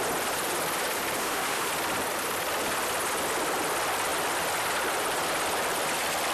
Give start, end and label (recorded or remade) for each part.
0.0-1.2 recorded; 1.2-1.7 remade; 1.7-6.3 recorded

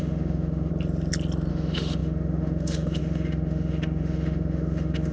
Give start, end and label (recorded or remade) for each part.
0.0-0.7 remade; 0.7-1.5 recorded; 1.5-5.1 remade

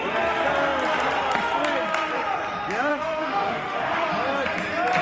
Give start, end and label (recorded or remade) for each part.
0.0-2.9 recorded; 2.9-4.1 remade; 4.1-5.0 recorded